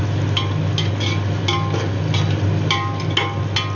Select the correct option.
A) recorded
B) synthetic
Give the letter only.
A